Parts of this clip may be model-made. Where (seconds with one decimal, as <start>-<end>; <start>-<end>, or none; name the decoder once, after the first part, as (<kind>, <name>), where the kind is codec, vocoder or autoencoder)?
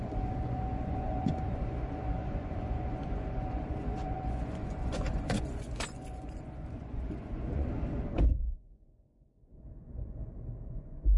0.0-10.2 (vocoder, Vocos); 10.7-11.2